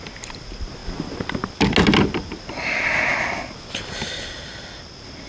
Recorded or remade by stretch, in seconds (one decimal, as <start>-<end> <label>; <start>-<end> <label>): 0.0-5.3 recorded